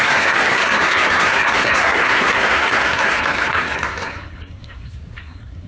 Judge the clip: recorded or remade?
remade